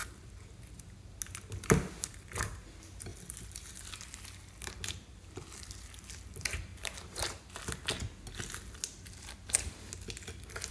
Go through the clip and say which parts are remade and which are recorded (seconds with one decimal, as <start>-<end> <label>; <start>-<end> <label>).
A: 0.0-6.7 recorded; 6.7-7.5 remade; 7.5-10.7 recorded